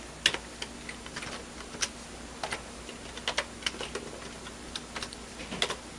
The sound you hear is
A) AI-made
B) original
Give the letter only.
B